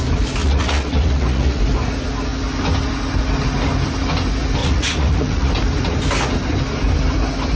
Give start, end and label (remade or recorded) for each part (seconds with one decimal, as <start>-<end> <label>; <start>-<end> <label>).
0.0-0.4 recorded; 0.4-1.6 remade; 1.6-4.6 recorded; 4.6-5.5 remade; 5.5-7.6 recorded